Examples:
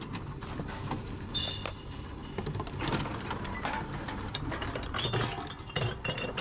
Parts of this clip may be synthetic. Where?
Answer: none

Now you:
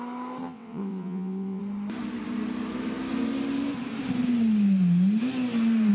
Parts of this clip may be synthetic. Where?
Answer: 0.4-1.6

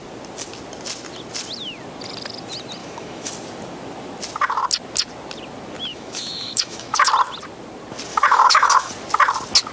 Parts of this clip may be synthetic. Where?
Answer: 2.8-3.3; 5.9-7.1; 8.1-8.9

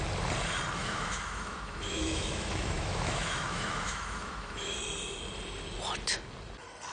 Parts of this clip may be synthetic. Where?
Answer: 0.8-4.8

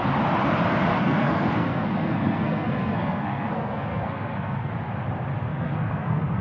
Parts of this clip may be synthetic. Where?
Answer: 0.9-4.7; 5.5-6.4